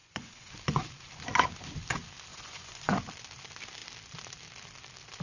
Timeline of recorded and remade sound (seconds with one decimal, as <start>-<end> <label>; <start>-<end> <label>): 0.0-0.5 remade; 0.5-2.3 recorded; 2.3-3.0 remade; 3.0-5.2 recorded